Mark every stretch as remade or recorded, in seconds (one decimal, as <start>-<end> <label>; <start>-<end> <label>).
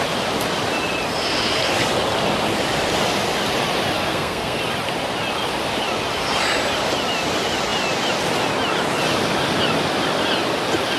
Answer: 0.0-4.1 recorded; 4.1-4.6 remade; 4.6-11.0 recorded